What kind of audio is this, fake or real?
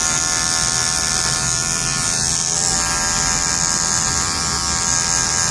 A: real